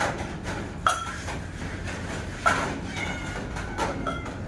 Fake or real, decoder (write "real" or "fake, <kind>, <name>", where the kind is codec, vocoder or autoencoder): real